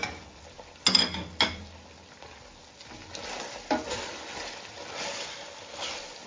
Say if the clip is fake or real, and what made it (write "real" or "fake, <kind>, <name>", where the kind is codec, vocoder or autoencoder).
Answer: real